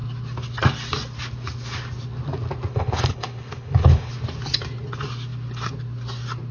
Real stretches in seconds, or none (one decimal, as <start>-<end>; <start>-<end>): 0.0-2.7; 4.1-6.5